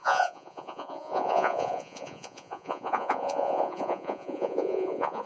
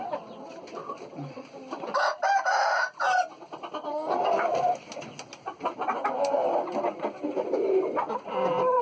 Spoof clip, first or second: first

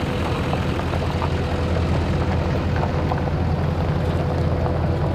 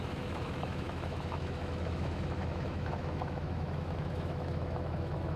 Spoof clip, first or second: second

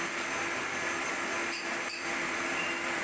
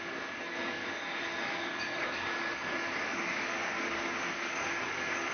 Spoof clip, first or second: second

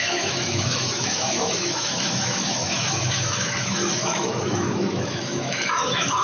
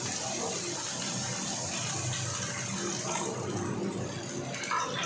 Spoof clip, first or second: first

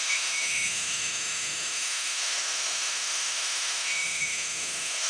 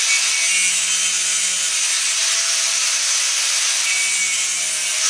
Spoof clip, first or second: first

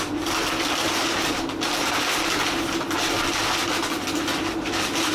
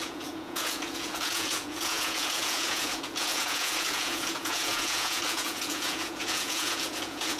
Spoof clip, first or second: second